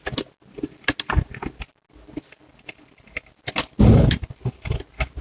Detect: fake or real real